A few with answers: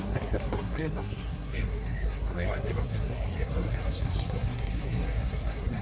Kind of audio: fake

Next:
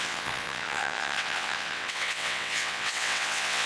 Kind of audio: fake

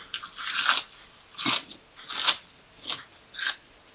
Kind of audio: real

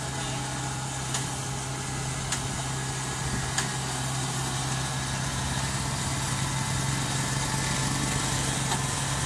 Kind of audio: real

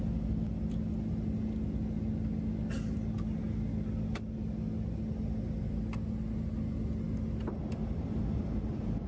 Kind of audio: real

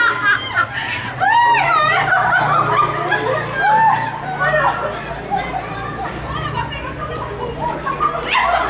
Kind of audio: real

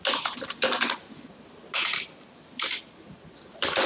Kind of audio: real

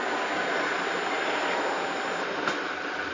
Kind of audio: real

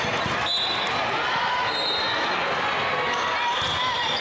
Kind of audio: real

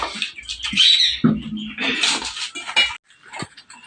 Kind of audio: real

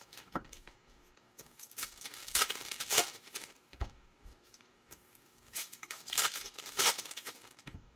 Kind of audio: fake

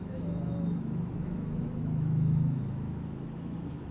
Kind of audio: fake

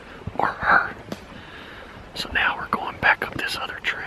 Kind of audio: fake